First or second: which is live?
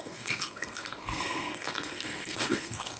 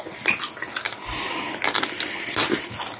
second